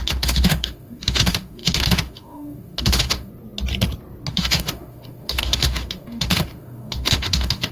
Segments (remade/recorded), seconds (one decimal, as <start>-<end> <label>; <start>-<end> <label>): 0.0-3.3 remade; 3.3-4.3 recorded; 4.3-7.7 remade